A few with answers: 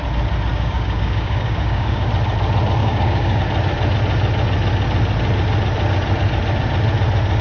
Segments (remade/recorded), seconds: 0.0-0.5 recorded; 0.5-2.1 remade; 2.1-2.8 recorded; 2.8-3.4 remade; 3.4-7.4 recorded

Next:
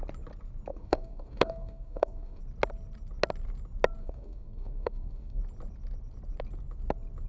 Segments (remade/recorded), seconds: 0.0-0.7 recorded; 0.7-2.4 remade; 2.4-4.0 recorded; 4.0-5.4 remade; 5.4-7.3 recorded

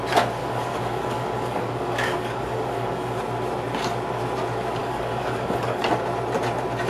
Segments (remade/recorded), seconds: 0.0-0.4 recorded; 0.4-3.2 remade; 3.2-4.8 recorded; 4.8-5.9 remade; 5.9-6.9 recorded

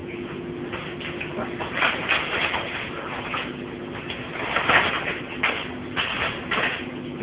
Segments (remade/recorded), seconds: 0.0-7.2 recorded

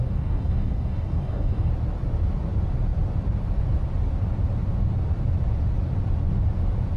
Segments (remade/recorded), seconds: 0.0-1.7 remade; 1.7-7.0 recorded

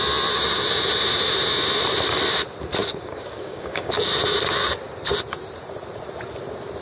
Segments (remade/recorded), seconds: 0.0-2.8 recorded; 2.8-3.9 remade; 3.9-6.8 recorded

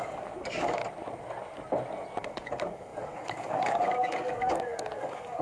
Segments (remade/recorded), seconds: 0.0-0.8 remade; 0.8-2.2 recorded; 2.2-5.4 remade

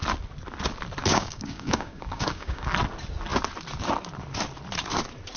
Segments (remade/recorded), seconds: 0.0-1.0 recorded; 1.0-2.7 remade; 2.7-5.4 recorded